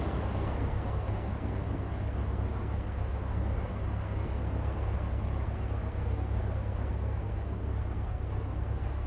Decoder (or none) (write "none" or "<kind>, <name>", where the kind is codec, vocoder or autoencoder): codec, SNAC